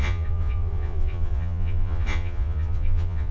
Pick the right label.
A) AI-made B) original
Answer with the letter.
A